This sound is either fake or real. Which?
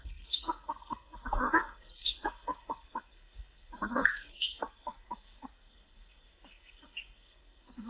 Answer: fake